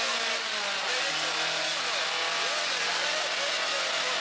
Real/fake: real